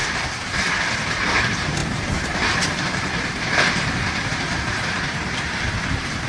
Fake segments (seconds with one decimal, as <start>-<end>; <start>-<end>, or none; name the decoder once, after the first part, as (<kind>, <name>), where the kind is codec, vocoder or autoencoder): 1.1-6.3 (vocoder, BigVGAN v2)